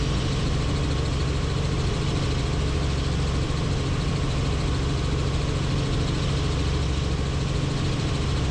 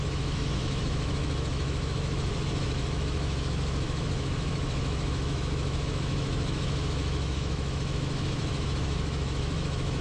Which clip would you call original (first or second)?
first